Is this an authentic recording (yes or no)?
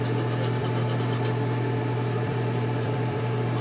no